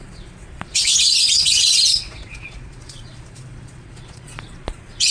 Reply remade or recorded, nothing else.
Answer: remade